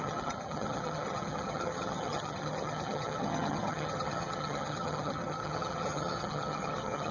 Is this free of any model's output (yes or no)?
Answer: no